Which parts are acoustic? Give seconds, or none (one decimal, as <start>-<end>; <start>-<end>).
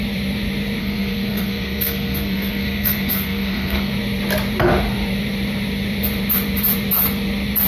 0.0-0.8; 3.9-7.7